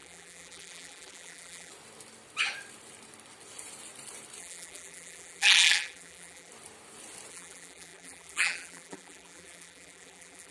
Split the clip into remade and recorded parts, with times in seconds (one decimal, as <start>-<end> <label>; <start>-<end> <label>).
0.0-1.7 remade; 1.7-4.4 recorded; 4.4-6.5 remade; 6.5-7.3 recorded; 7.3-10.5 remade